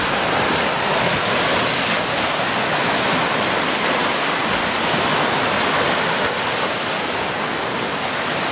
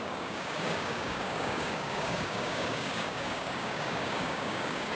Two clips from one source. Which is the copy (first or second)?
second